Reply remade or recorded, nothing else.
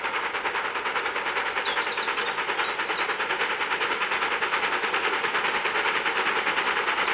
recorded